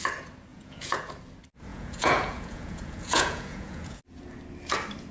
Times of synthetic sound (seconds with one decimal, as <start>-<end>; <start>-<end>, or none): 0.5-1.1; 1.7-4.0